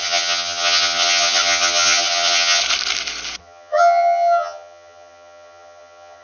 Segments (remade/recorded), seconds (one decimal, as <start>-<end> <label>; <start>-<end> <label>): 0.0-2.6 remade; 2.6-3.4 recorded; 3.4-6.2 remade